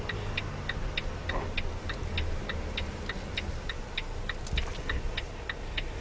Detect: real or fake real